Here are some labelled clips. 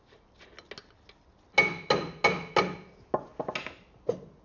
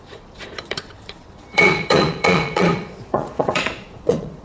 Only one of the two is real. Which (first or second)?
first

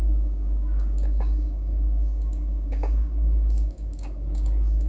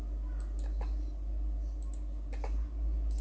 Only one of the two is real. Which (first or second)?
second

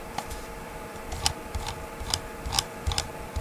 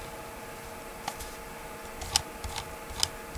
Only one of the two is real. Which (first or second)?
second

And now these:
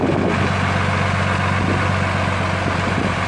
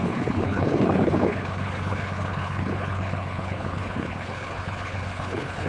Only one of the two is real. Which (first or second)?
first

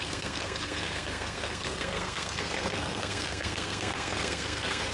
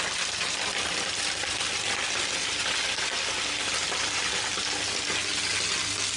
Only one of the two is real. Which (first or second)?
second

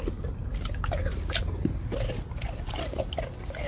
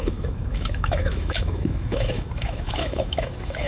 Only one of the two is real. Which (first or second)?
first